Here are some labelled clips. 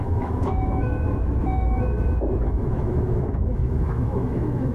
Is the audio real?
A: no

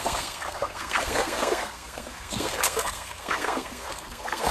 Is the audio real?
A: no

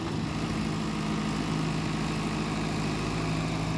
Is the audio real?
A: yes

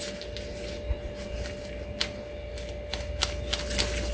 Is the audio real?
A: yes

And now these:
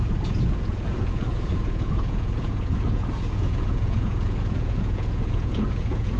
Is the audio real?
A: no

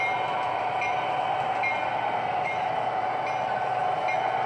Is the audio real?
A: yes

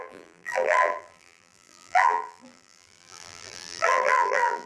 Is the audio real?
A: no